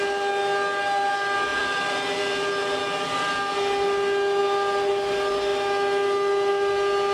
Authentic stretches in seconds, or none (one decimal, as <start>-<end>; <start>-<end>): 0.0-1.5; 3.3-7.1